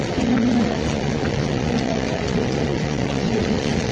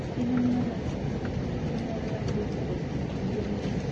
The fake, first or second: first